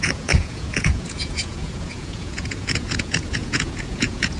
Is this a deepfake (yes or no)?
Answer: yes